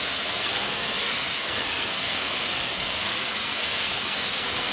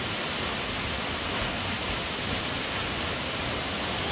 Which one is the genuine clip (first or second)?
second